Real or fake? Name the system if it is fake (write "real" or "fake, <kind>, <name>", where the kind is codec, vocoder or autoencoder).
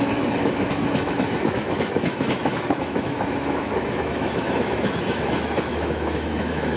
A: fake, autoencoder, DAC-VAE